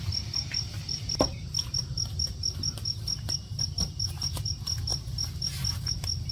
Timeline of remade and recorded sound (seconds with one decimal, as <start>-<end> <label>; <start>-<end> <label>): 0.0-6.3 recorded